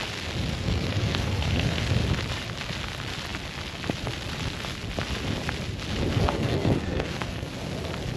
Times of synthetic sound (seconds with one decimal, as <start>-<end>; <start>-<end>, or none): 0.5-1.9; 6.1-7.5